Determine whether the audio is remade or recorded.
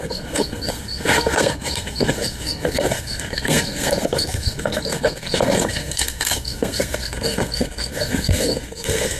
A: remade